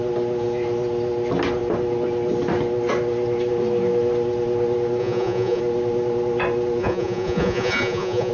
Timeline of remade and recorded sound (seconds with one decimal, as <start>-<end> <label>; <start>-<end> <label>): 0.0-5.0 recorded; 5.0-5.6 remade; 5.6-6.8 recorded; 6.8-8.3 remade

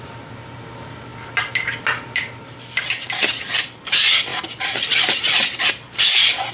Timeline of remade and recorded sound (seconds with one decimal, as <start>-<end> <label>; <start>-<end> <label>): 0.0-6.5 recorded

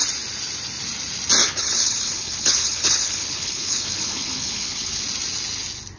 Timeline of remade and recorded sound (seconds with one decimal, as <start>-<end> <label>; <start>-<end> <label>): 0.0-1.4 recorded; 1.4-5.0 remade; 5.0-6.0 recorded

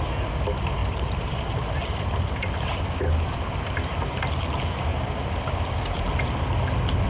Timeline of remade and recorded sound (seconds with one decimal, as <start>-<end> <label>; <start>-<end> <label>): 0.0-0.8 recorded; 0.8-2.8 remade; 2.8-4.9 recorded; 4.9-6.4 remade; 6.4-7.1 recorded

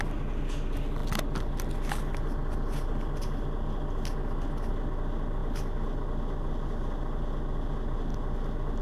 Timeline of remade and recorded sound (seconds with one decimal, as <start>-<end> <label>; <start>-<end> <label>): 0.0-8.8 recorded

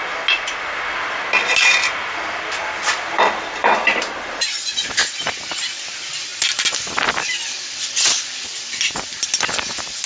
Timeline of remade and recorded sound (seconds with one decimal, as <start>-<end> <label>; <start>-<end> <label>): 0.0-10.1 recorded

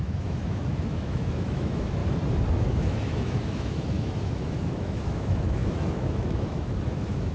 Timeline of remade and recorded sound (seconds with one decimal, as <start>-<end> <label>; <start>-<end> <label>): 0.0-2.0 remade; 2.0-2.5 recorded; 2.5-7.3 remade